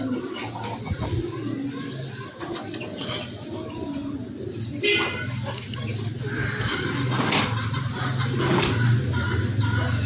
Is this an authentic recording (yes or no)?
yes